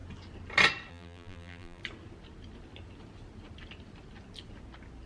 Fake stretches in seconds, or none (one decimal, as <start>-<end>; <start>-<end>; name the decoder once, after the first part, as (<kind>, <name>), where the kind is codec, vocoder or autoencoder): 0.9-1.8 (vocoder, BigVGAN v2)